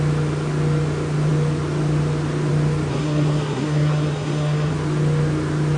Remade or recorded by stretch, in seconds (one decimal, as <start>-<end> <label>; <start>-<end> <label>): 0.0-2.9 recorded; 2.9-4.7 remade; 4.7-5.8 recorded